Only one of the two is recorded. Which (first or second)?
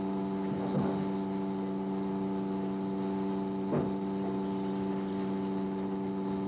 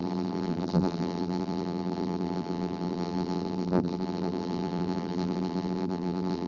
first